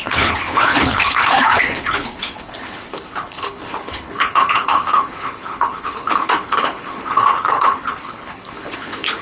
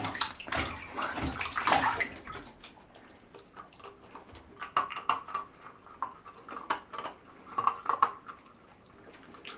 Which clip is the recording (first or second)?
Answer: second